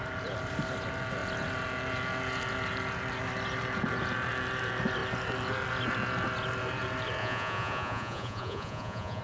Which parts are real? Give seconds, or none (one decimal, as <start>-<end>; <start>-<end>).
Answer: 0.0-7.2